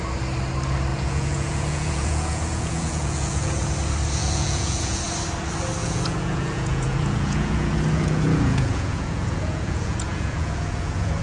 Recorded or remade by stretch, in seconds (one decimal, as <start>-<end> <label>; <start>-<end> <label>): 0.0-0.9 recorded; 0.9-3.6 remade; 3.6-4.2 recorded; 4.2-5.0 remade; 5.0-5.8 recorded; 5.8-11.2 remade